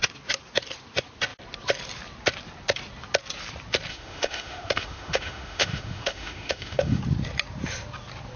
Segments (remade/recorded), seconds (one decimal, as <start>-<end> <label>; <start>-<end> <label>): 0.0-3.9 recorded; 3.9-7.0 remade; 7.0-8.4 recorded